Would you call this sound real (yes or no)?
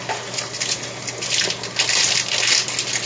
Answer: yes